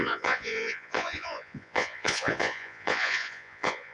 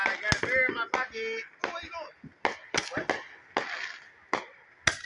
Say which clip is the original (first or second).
second